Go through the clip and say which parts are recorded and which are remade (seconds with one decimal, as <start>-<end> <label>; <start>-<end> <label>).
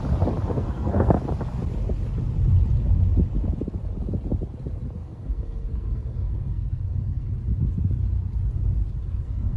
0.0-0.5 recorded; 0.5-1.2 remade; 1.2-5.0 recorded; 5.0-7.3 remade; 7.3-9.0 recorded; 9.0-9.6 remade